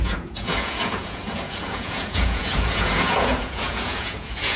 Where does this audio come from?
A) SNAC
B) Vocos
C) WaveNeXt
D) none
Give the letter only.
B